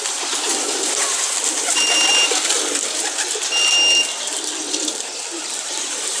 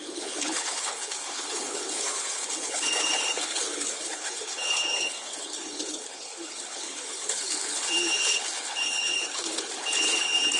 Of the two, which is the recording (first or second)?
first